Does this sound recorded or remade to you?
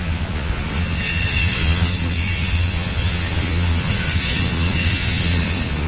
remade